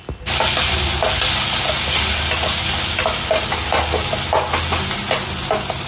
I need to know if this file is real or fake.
real